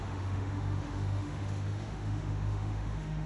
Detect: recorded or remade remade